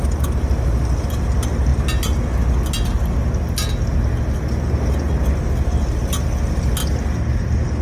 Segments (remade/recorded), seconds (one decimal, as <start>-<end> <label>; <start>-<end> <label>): 0.0-7.8 recorded